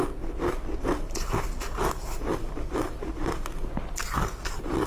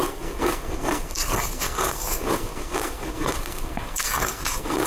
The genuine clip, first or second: first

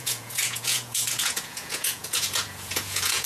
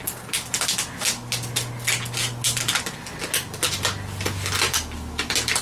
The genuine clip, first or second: second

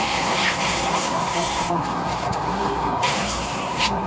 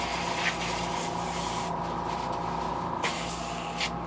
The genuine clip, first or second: second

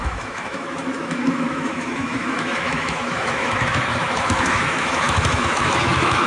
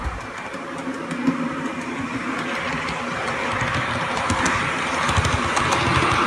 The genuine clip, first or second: second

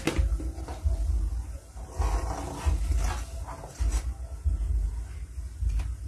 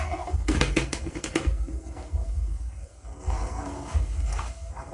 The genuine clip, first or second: first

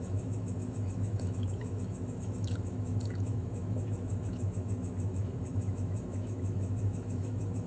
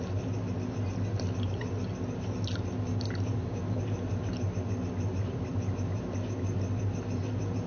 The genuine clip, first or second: second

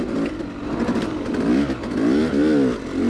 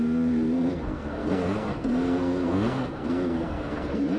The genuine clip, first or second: first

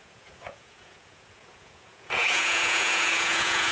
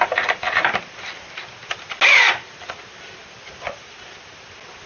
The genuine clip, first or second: second